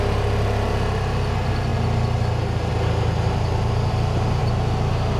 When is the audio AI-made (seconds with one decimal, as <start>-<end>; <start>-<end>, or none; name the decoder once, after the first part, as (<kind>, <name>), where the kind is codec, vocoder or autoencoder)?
none

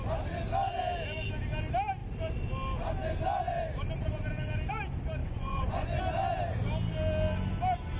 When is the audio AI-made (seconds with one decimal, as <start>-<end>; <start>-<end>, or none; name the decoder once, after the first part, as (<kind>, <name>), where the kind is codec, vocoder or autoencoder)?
5.2-6.0 (vocoder, Vocos)

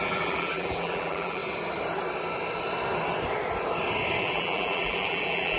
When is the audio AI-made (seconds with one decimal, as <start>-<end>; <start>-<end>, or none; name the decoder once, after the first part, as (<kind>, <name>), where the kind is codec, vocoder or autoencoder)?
0.0-1.4 (vocoder, BigVGAN v2); 4.2-5.6

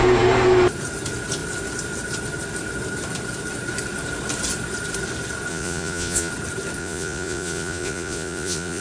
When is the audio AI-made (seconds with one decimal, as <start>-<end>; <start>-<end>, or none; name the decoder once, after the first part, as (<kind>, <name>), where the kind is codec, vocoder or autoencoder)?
5.5-6.3 (vocoder, Vocos); 6.8-8.8

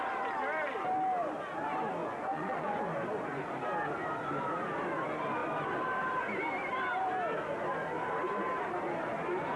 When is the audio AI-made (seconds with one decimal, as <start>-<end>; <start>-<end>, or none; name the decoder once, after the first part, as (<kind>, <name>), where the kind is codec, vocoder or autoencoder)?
2.0-2.8 (vocoder, Vocos)